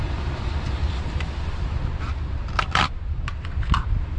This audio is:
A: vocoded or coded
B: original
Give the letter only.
A